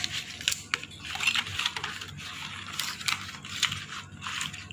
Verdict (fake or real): real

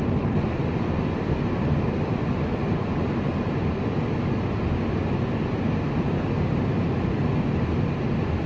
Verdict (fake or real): real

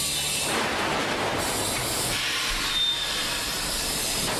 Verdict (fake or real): real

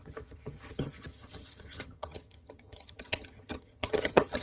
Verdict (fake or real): fake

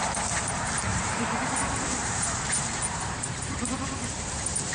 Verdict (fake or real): fake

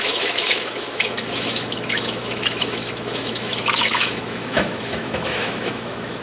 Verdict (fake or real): fake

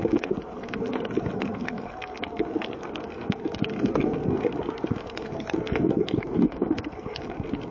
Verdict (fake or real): fake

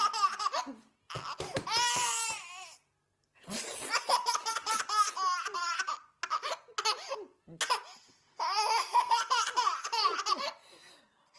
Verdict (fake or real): real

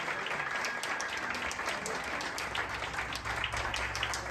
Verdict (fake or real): real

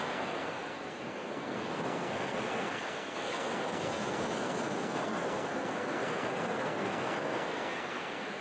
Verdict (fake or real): fake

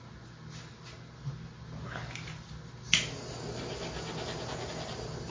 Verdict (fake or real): real